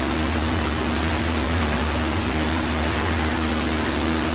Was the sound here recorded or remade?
remade